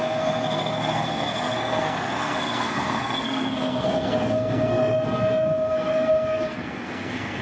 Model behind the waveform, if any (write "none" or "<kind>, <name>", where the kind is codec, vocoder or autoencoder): codec, SNAC